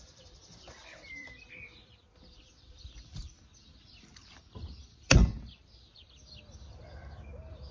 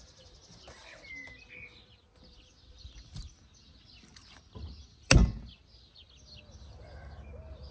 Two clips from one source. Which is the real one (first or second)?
second